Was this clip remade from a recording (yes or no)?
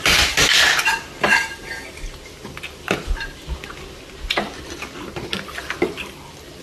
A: no